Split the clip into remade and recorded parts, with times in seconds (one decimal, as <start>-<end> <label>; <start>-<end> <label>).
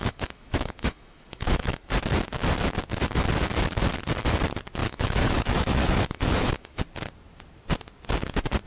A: 0.0-1.9 remade; 1.9-4.8 recorded; 4.8-6.8 remade; 6.8-8.7 recorded